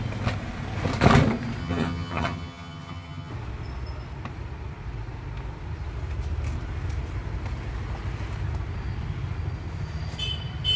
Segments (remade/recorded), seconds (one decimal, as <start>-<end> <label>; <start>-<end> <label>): 0.0-1.6 recorded; 1.6-3.3 remade; 3.3-10.8 recorded